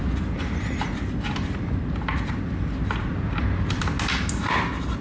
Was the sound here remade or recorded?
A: recorded